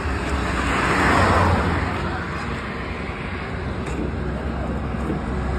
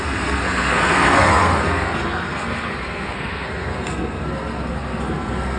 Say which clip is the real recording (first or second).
first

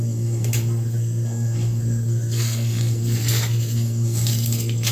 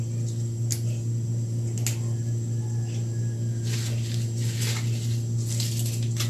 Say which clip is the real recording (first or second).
second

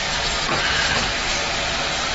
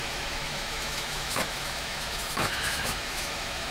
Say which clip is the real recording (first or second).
first